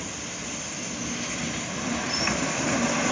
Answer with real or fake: real